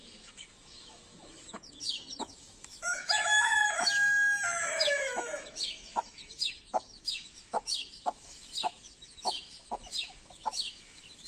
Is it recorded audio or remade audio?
remade